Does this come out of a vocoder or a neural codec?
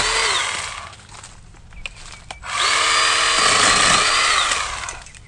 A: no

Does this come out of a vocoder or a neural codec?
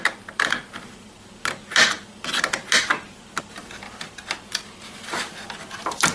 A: no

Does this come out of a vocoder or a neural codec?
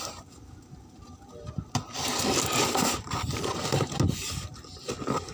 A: no